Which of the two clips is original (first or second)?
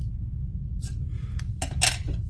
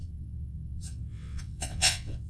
first